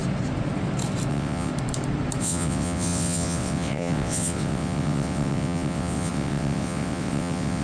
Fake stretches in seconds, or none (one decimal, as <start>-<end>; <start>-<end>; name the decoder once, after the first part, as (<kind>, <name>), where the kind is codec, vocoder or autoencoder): 1.1-1.5 (vocoder, WaveNeXt); 2.2-7.6